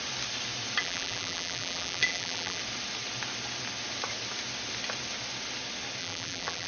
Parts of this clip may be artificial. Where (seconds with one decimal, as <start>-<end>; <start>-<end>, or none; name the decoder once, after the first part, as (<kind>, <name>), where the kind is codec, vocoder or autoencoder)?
0.8-2.6 (vocoder, BigVGAN v2); 6.0-6.7